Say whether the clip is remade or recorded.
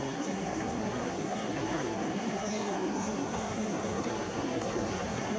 remade